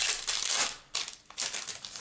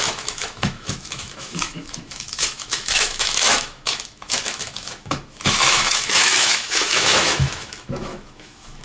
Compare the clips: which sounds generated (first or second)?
second